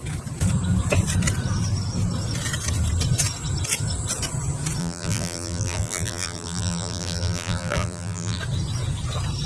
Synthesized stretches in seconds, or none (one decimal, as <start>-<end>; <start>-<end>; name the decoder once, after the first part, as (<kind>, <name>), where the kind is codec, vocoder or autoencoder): 4.8-8.4 (vocoder, BigVGAN v2)